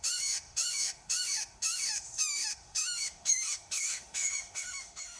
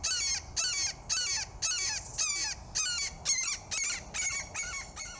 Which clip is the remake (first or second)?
first